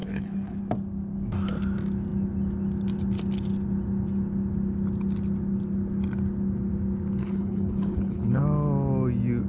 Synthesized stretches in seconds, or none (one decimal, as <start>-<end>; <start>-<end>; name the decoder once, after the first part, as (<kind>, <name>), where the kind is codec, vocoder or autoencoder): 0.0-0.6 (codec, HILCodec); 7.2-8.4